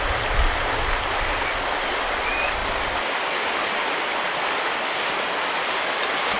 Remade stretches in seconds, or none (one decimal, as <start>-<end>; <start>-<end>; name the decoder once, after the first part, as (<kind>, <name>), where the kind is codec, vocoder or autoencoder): none